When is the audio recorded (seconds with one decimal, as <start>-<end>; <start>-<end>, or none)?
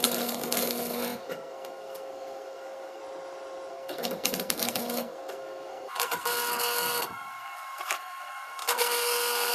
3.0-3.7